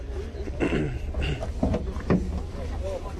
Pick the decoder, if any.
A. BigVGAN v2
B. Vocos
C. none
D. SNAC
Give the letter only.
C